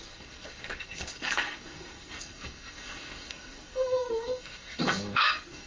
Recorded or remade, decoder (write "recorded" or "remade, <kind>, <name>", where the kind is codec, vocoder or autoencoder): remade, codec, SNAC